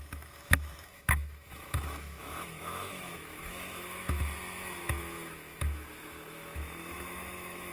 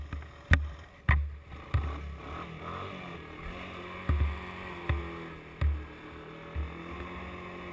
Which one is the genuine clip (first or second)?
second